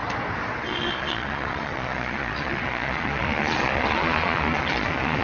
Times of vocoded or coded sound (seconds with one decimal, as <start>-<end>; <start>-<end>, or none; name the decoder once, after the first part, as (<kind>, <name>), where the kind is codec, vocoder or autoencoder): 0.6-5.2 (vocoder, Vocos)